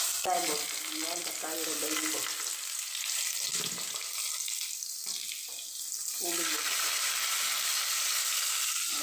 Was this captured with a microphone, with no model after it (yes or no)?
yes